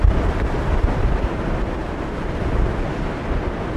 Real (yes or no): yes